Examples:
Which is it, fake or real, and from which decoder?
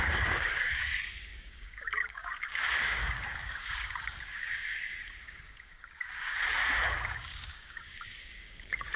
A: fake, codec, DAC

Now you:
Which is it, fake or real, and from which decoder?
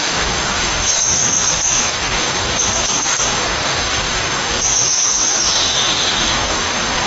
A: fake, codec, DAC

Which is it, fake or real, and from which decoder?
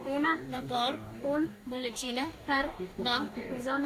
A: fake, codec, DAC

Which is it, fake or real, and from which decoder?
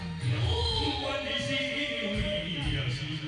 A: real